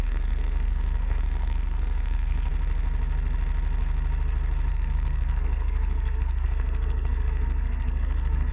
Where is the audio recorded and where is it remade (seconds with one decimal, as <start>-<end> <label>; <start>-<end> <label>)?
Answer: 0.0-2.5 remade; 2.5-4.7 recorded; 4.7-8.5 remade